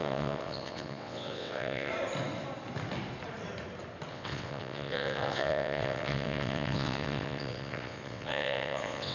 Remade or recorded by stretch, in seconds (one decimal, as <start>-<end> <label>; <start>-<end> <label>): 0.0-1.9 remade; 1.9-4.1 recorded; 4.1-9.1 remade